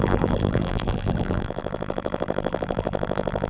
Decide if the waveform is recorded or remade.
remade